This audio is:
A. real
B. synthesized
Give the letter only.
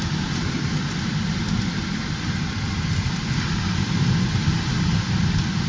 B